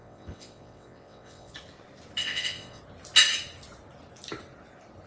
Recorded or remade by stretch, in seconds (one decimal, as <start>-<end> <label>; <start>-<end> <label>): 0.0-1.5 remade; 1.5-2.2 recorded; 2.2-2.8 remade; 2.8-5.1 recorded